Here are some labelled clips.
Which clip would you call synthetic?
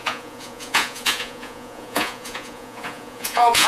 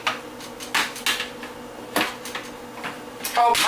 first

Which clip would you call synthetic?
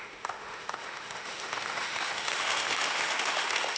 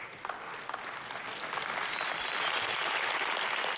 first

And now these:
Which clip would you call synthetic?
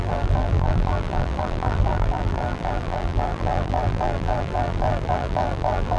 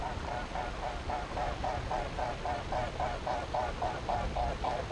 first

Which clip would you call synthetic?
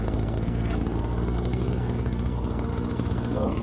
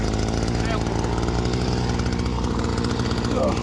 first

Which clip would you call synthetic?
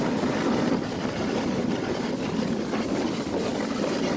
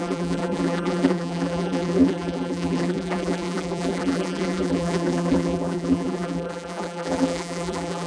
second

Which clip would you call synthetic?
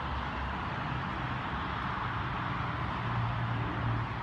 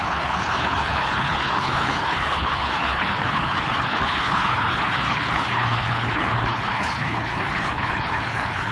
second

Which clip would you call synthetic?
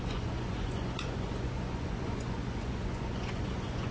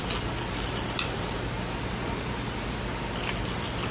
first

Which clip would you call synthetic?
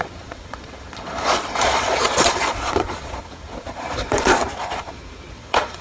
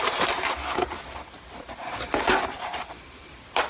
first